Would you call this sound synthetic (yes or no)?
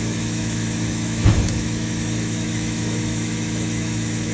yes